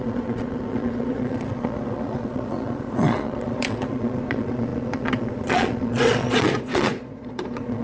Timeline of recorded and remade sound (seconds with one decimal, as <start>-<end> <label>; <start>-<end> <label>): 0.0-7.8 remade